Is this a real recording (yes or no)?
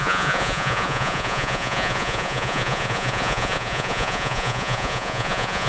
no